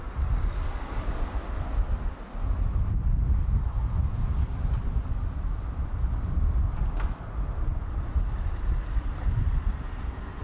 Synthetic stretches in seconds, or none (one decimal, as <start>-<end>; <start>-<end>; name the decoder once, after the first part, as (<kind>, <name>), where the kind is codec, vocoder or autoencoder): 3.2-4.8 (vocoder, BigVGAN v2)